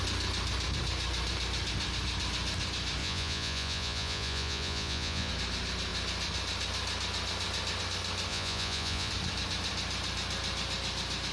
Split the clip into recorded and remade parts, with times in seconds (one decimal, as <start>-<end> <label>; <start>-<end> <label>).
0.0-3.0 recorded; 3.0-5.3 remade; 5.3-8.3 recorded; 8.3-9.1 remade; 9.1-11.3 recorded